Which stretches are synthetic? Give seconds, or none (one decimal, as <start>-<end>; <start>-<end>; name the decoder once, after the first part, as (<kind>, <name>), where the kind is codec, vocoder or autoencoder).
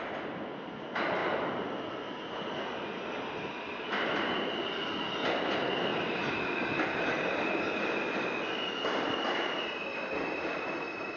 none